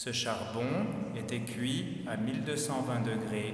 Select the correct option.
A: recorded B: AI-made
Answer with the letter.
A